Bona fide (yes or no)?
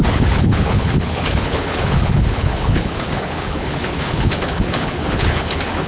no